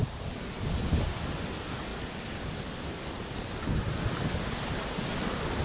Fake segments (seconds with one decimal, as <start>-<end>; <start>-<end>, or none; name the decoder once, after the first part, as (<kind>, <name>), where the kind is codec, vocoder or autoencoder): 0.0-0.9 (vocoder, BigVGAN v2); 1.9-3.6